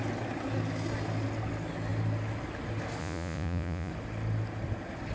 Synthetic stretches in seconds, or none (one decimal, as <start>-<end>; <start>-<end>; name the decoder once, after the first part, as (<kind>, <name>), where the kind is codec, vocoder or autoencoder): 3.0-3.9 (vocoder, Vocos)